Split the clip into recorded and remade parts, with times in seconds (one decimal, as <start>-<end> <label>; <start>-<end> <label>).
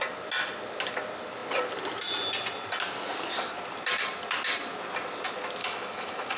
0.0-5.6 recorded; 5.6-6.4 remade